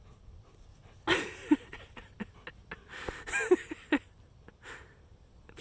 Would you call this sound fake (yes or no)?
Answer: no